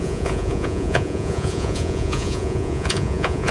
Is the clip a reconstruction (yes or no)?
yes